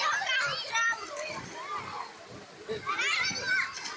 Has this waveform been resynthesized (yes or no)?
no